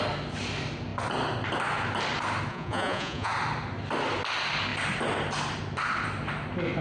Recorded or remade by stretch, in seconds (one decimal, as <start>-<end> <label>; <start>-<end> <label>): 0.0-2.5 recorded; 2.5-3.3 remade; 3.3-6.8 recorded